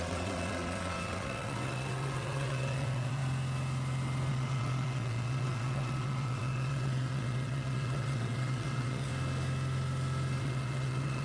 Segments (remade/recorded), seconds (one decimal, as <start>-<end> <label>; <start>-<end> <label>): 0.0-3.2 remade; 3.2-4.3 recorded; 4.3-9.1 remade; 9.1-10.4 recorded; 10.4-11.2 remade